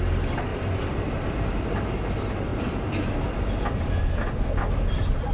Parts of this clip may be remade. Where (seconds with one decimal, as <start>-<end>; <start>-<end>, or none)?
0.5-1.7